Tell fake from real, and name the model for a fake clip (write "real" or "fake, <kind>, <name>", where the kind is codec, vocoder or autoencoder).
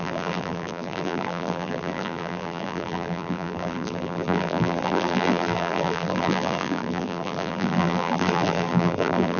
fake, vocoder, BigVGAN v2